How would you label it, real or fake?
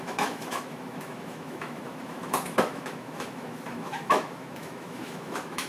fake